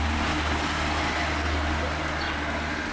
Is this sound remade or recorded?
recorded